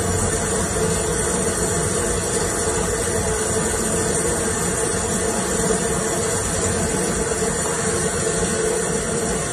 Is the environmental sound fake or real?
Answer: real